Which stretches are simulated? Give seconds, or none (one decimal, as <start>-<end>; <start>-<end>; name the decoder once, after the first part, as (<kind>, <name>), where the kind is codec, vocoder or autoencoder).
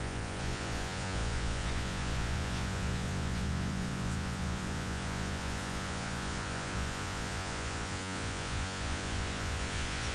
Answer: 0.0-10.1 (vocoder, Vocos)